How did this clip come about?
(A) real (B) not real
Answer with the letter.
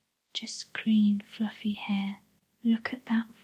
A